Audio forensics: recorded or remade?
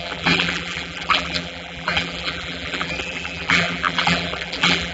remade